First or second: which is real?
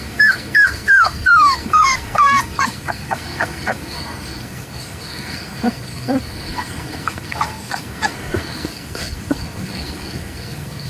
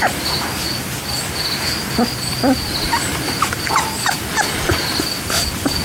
second